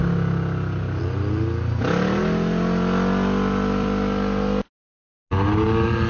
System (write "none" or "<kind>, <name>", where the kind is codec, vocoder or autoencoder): none